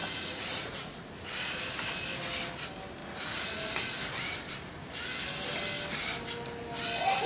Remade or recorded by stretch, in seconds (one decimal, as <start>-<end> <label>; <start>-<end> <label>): 0.0-1.1 remade; 1.1-3.0 recorded; 3.0-3.7 remade; 3.7-7.3 recorded